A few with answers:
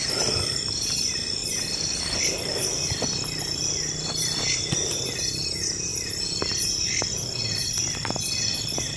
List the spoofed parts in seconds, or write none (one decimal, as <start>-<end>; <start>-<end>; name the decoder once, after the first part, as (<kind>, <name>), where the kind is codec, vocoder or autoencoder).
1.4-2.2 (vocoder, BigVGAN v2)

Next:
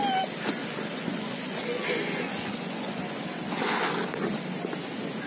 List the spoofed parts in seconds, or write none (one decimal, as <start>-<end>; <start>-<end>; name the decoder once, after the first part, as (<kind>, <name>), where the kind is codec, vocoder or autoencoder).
0.6-3.2 (vocoder, Vocos)

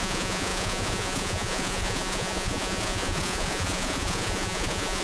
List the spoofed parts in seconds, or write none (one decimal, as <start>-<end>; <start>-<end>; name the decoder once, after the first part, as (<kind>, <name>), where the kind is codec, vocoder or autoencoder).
0.0-5.0 (vocoder, Vocos)